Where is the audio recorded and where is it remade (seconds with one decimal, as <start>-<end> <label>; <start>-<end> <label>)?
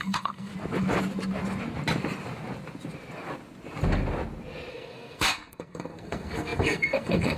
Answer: 0.0-0.5 remade; 0.5-4.7 recorded; 4.7-7.4 remade